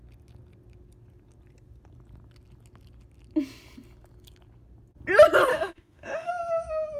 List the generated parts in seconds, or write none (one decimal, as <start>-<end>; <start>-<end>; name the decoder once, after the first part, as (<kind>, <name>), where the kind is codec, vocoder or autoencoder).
5.5-6.3 (autoencoder, DAC-VAE)